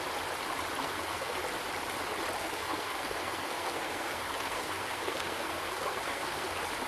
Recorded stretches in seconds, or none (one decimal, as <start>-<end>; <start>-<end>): 0.0-0.8; 1.4-2.4; 6.5-6.9